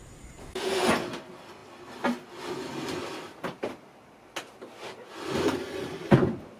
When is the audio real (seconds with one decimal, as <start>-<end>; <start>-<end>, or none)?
0.0-0.4; 0.9-6.6